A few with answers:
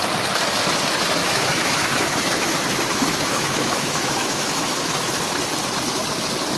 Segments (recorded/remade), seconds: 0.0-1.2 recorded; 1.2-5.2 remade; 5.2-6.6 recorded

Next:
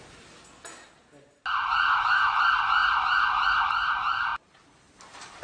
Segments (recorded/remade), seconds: 0.0-1.9 recorded; 1.9-2.4 remade; 2.4-5.4 recorded

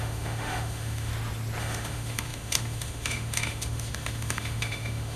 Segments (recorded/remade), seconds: 0.0-1.1 remade; 1.1-1.6 recorded; 1.6-5.2 remade

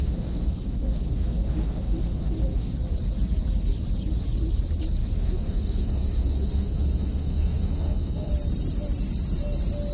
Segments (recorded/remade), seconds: 0.0-2.7 remade; 2.7-5.0 recorded; 5.0-8.3 remade; 8.3-9.9 recorded

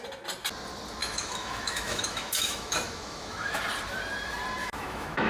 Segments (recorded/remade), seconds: 0.0-1.0 recorded; 1.0-3.6 remade; 3.6-4.6 recorded; 4.6-5.3 remade

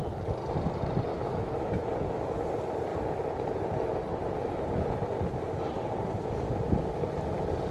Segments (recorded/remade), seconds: 0.0-1.1 recorded; 1.1-1.9 remade; 1.9-7.7 recorded